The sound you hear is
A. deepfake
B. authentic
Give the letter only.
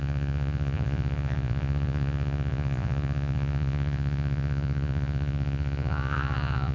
A